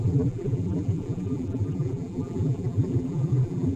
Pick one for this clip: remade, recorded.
remade